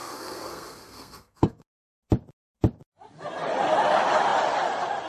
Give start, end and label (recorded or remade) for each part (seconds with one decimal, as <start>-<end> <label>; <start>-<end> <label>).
0.0-1.9 remade; 1.9-5.1 recorded

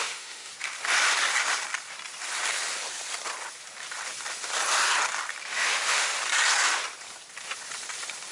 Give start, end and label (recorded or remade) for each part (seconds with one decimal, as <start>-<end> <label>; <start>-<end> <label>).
0.0-0.5 remade; 0.5-5.5 recorded; 5.5-6.1 remade; 6.1-8.3 recorded

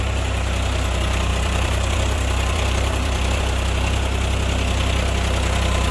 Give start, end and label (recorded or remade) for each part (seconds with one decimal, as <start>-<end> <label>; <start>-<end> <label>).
0.0-1.3 recorded; 1.3-3.4 remade; 3.4-5.9 recorded

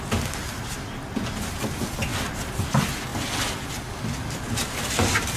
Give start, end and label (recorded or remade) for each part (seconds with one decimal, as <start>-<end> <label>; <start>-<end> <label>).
0.0-5.4 recorded